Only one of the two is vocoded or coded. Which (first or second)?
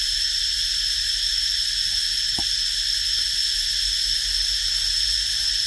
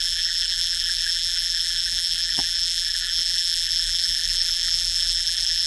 second